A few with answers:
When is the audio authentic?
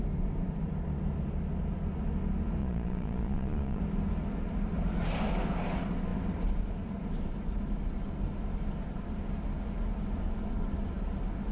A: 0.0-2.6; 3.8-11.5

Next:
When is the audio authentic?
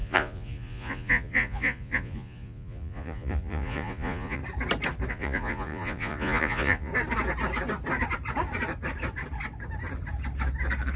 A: 4.4-5.1; 6.9-11.0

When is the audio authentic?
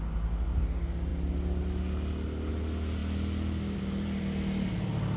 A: 0.0-5.2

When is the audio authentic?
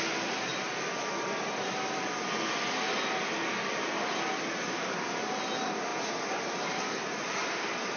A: 0.0-8.0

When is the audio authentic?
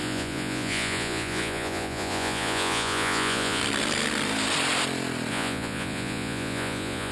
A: 3.6-5.3